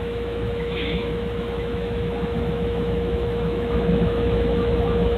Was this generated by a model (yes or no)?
yes